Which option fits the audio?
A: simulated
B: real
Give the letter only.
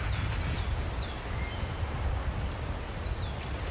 B